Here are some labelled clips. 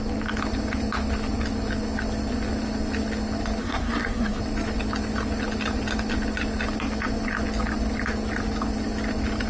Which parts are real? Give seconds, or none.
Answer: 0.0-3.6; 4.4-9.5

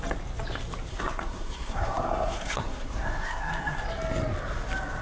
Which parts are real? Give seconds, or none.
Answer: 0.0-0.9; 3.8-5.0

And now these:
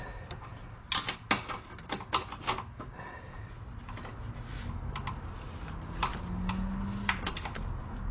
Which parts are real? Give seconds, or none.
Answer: 0.0-8.1

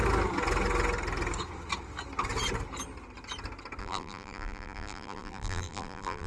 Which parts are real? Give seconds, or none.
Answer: 0.0-3.8

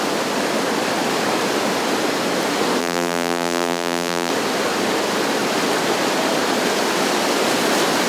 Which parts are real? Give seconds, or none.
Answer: 0.0-2.8; 4.3-8.1

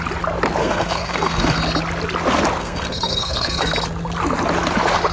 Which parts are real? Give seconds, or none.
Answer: 0.0-0.6; 1.6-2.6; 3.7-5.1